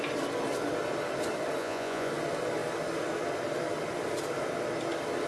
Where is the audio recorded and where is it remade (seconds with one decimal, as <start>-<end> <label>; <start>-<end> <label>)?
0.0-1.6 recorded; 1.6-2.1 remade; 2.1-5.3 recorded